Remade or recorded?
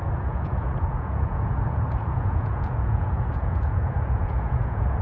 remade